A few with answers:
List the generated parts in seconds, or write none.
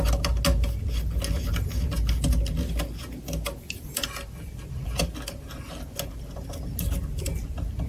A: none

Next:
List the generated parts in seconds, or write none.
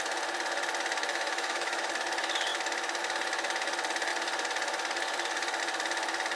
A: 1.1-1.9 (autoencoder, DAC-VAE)